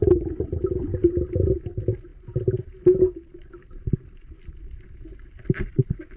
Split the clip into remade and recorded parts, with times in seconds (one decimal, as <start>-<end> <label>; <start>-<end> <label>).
0.0-6.2 recorded